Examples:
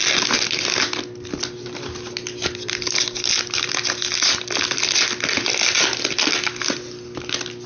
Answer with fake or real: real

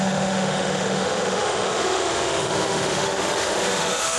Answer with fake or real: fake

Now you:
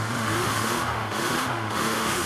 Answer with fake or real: fake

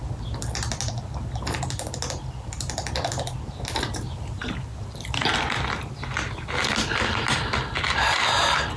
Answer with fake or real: real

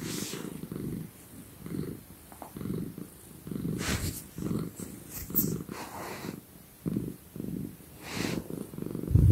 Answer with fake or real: real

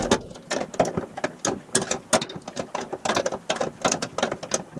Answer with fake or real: real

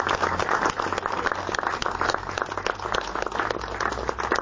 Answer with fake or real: real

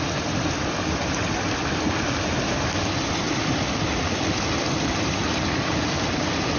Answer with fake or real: real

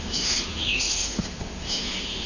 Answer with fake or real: fake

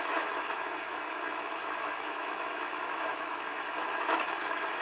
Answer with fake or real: fake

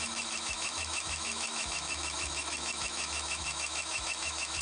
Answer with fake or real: fake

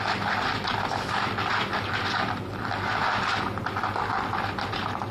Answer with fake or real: real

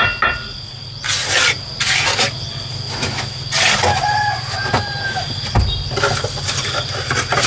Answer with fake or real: real